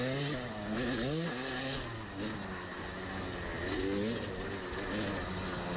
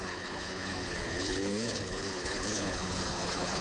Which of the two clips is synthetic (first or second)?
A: second